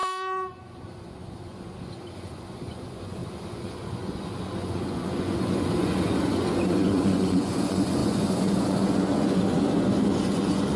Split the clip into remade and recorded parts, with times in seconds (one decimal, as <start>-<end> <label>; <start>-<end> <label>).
0.0-10.8 remade